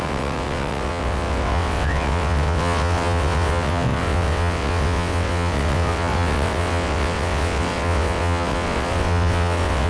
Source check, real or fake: fake